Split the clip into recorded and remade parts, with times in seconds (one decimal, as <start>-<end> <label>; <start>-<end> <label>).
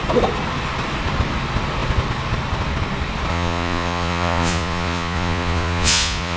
0.0-3.3 recorded; 3.3-6.4 remade